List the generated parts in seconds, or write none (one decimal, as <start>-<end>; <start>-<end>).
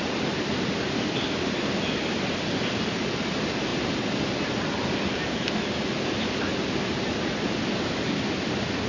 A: none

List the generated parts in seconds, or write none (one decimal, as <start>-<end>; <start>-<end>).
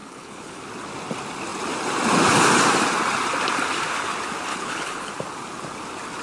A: 0.0-0.6; 4.5-5.1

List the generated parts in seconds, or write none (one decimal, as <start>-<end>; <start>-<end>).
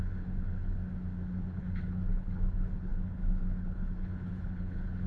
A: 0.0-0.8; 1.4-5.1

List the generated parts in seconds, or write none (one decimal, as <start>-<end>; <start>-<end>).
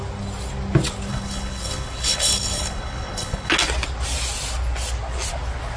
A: 1.1-3.5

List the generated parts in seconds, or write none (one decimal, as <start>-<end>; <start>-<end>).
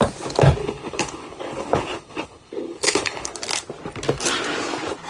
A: 0.6-3.3